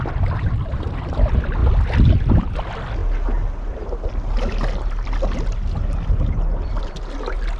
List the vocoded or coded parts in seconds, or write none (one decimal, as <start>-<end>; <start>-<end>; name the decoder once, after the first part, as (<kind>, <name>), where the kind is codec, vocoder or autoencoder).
none